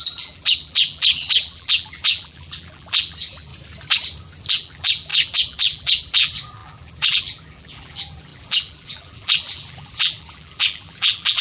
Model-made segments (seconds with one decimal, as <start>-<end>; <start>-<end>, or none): 0.0-3.5; 4.5-11.4